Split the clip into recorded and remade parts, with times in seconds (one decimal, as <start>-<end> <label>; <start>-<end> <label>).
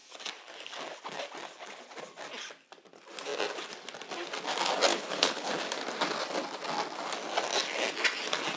0.0-4.9 recorded; 4.9-5.5 remade; 5.5-8.6 recorded